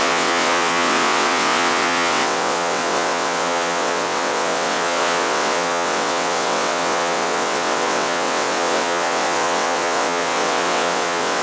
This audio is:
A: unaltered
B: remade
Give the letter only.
B